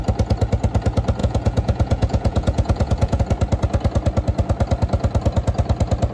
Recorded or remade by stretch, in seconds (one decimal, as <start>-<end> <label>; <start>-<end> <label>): 0.0-1.2 recorded; 1.2-3.2 remade; 3.2-6.1 recorded